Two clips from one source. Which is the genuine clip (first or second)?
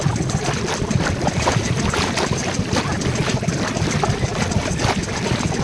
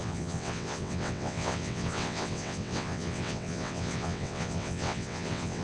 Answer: first